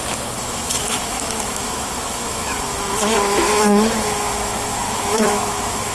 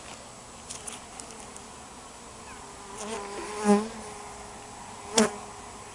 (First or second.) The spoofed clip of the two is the first